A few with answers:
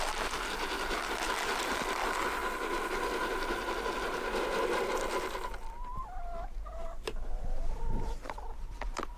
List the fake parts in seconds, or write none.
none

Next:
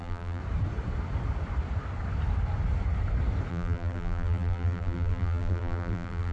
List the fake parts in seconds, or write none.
0.0-0.4 (vocoder, BigVGAN v2); 3.5-6.3

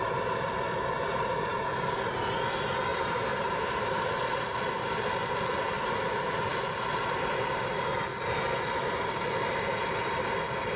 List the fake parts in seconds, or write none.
2.9-4.0 (vocoder, BigVGAN v2)